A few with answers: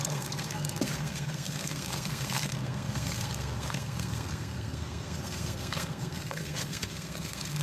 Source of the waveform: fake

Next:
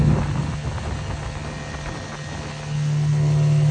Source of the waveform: real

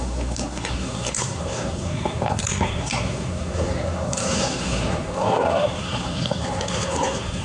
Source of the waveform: fake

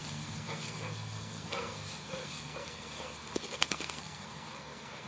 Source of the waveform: fake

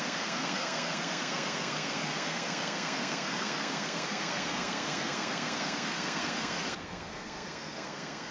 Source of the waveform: fake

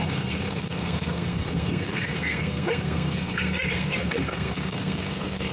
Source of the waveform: fake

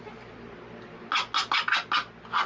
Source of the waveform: real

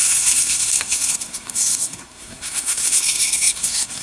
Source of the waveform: fake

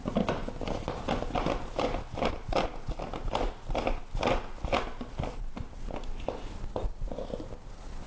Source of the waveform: real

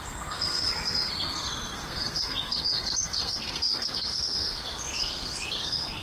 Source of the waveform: fake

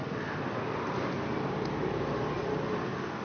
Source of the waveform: real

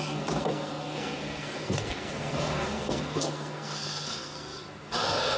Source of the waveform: fake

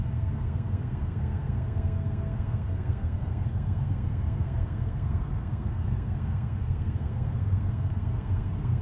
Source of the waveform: fake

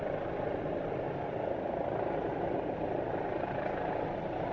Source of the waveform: real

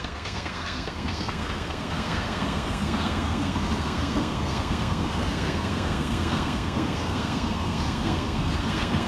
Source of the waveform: fake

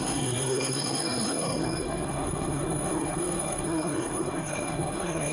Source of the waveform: fake